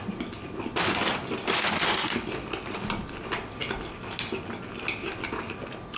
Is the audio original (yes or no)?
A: yes